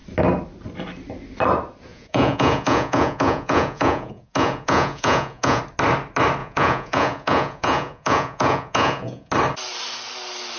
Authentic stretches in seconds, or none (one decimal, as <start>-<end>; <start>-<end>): 0.0-1.9; 5.6-6.4; 9.3-10.6